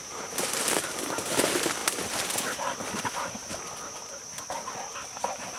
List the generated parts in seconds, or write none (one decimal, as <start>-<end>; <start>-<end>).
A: none